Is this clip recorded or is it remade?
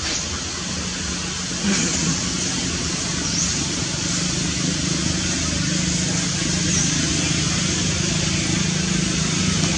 recorded